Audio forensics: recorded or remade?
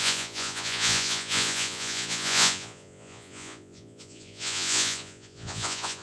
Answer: remade